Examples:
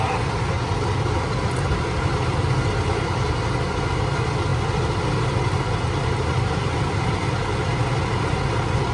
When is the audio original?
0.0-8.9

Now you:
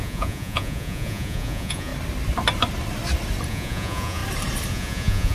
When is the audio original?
1.9-3.5; 4.2-4.7